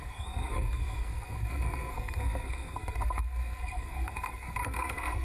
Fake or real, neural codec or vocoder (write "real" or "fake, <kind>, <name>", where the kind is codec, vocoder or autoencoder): fake, codec, SNAC